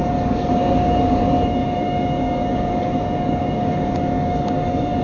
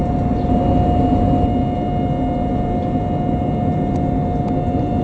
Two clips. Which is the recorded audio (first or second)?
second